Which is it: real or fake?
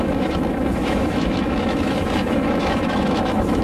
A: fake